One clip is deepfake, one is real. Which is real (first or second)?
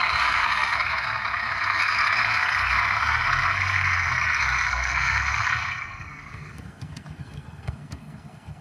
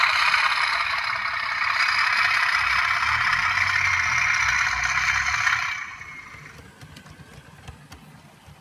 second